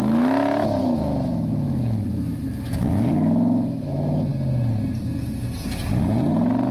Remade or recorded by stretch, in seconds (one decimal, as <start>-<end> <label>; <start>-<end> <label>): 0.0-4.3 remade; 4.3-6.7 recorded